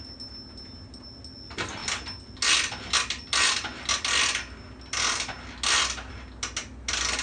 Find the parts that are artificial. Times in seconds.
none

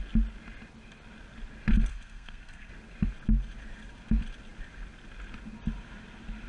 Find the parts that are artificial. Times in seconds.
1.9-2.7 (codec, SNAC)

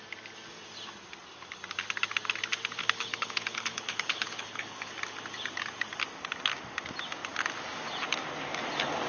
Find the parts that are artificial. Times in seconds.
2.8-4.9 (codec, HILCodec)

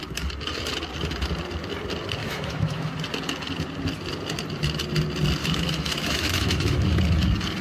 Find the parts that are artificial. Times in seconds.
2.2-2.9 (autoencoder, DAC-VAE); 5.4-7.0

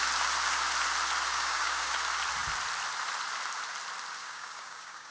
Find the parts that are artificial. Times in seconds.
1.3-1.9 (codec, DAC); 4.2-5.1

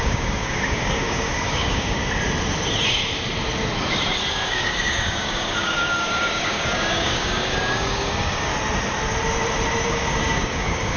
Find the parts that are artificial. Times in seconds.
0.0-2.0 (codec, DAC); 4.3-8.5; 9.9-11.0

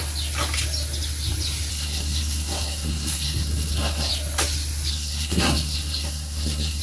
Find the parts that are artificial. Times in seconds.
1.7-4.1 (codec, SNAC); 4.9-6.8

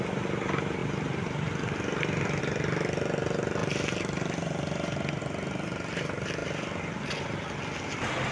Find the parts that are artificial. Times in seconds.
0.8-2.4 (vocoder, BigVGAN v2); 3.6-5.2